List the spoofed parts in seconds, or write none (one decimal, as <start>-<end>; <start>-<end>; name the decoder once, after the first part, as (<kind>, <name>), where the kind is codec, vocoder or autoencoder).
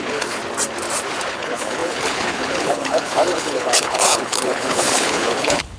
0.0-0.4 (codec, HILCodec); 1.3-5.8